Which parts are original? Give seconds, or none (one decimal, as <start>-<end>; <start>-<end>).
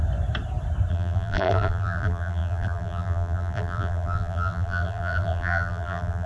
0.0-0.9